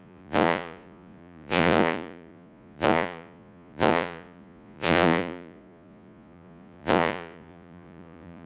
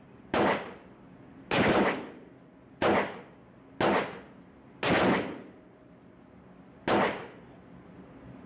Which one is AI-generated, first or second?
first